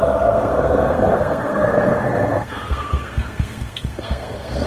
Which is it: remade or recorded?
remade